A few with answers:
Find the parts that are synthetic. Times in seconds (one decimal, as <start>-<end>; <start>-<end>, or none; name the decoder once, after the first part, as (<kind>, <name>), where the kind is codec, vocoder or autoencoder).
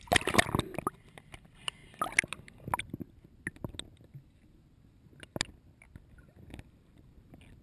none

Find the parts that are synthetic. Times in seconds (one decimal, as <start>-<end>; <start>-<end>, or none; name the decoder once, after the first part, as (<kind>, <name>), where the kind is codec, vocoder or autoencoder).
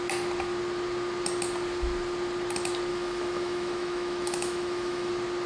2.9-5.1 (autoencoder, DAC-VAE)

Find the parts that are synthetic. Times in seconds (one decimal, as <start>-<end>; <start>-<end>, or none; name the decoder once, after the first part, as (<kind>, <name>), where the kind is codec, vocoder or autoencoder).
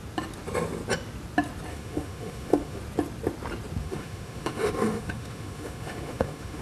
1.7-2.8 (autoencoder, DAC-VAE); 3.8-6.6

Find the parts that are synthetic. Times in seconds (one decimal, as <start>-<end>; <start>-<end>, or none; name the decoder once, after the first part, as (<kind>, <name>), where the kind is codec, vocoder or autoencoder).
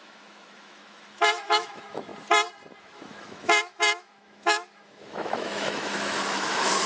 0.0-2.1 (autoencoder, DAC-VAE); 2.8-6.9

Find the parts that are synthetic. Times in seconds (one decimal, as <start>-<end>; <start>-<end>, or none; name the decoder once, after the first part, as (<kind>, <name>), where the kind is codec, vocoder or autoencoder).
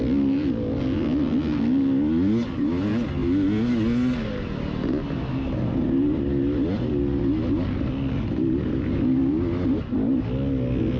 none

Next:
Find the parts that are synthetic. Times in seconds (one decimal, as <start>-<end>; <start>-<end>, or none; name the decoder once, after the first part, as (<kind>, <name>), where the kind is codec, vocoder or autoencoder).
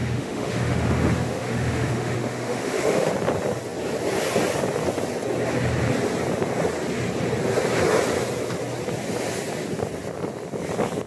0.0-3.1 (autoencoder, DAC-VAE)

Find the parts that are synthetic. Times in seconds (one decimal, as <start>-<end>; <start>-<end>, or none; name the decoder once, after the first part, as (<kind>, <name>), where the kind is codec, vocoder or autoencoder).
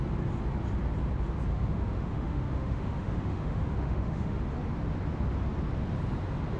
1.5-4.4 (autoencoder, DAC-VAE)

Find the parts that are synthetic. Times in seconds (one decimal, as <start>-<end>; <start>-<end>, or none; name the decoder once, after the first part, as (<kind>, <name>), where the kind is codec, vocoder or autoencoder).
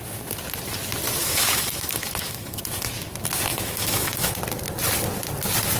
1.2-2.6 (autoencoder, DAC-VAE); 3.5-4.3